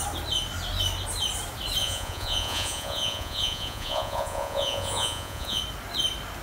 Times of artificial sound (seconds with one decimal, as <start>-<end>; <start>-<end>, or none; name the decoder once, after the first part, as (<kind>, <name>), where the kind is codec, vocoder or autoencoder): 1.8-5.6 (vocoder, Vocos)